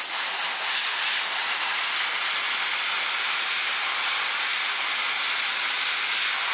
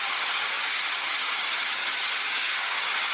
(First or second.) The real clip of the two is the first